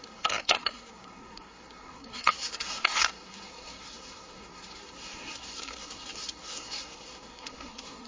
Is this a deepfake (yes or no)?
yes